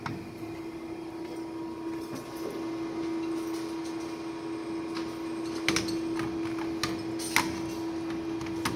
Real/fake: real